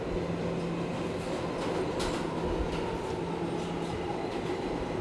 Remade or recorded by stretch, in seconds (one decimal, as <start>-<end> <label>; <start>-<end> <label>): 0.0-5.0 recorded

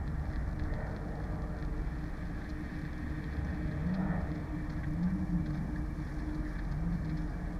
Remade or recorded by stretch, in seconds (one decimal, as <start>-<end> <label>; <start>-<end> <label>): 0.0-7.6 recorded